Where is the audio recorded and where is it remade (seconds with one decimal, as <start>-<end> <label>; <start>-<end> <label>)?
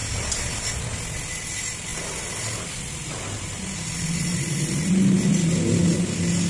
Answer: 0.0-1.9 recorded; 1.9-4.9 remade; 4.9-6.5 recorded